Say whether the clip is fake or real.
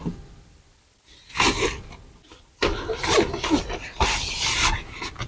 real